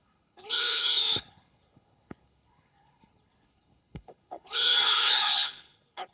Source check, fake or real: fake